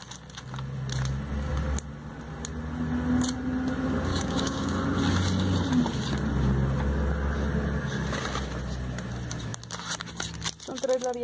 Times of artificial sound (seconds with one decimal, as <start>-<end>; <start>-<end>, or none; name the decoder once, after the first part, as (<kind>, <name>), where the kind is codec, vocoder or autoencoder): 4.1-4.7 (codec, DAC)